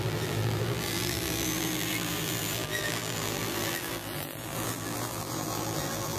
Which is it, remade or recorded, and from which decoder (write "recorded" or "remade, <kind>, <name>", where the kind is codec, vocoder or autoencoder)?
remade, vocoder, BigVGAN v2